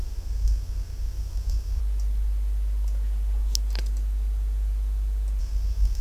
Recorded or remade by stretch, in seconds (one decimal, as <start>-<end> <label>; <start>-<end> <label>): 0.0-1.8 remade; 1.8-5.4 recorded; 5.4-6.0 remade